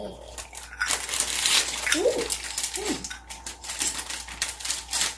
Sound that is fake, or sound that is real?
real